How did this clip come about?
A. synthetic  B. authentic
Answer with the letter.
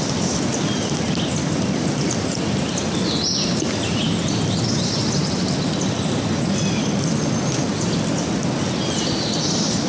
B